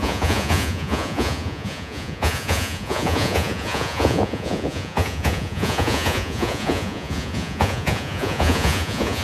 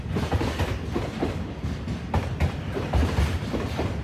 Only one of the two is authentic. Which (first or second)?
second